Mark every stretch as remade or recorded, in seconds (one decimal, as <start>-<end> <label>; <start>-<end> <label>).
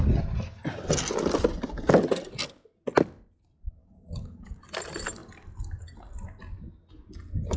0.0-3.8 recorded; 3.8-4.6 remade; 4.6-7.6 recorded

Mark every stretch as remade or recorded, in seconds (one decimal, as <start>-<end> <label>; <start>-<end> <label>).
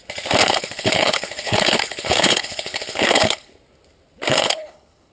0.0-0.4 recorded; 0.4-3.5 remade; 3.5-4.3 recorded; 4.3-5.1 remade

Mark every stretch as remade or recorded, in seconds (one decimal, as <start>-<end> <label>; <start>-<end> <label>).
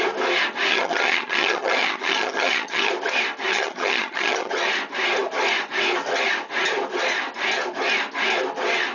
0.0-0.7 recorded; 0.7-2.9 remade; 2.9-3.5 recorded; 3.5-4.5 remade; 4.5-8.9 recorded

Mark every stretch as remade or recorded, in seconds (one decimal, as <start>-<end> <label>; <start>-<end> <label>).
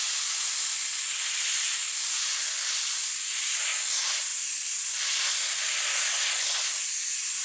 0.0-7.4 recorded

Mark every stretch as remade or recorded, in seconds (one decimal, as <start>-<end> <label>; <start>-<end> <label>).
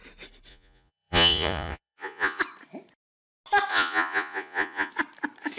0.0-0.5 recorded; 0.5-2.4 remade; 2.4-3.7 recorded; 3.7-4.9 remade; 4.9-5.6 recorded